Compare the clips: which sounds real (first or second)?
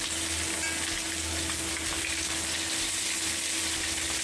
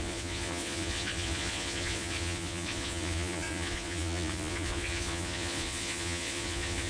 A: first